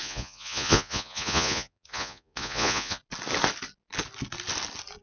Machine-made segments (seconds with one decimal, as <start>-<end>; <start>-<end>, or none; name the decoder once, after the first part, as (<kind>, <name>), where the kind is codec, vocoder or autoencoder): 0.0-3.0 (vocoder, Vocos)